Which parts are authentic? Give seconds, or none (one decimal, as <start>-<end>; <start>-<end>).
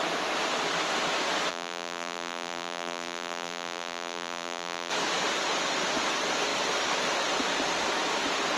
0.0-1.5; 4.9-8.6